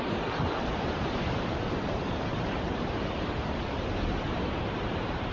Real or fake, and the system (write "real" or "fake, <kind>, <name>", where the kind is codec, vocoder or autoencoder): fake, vocoder, BigVGAN v2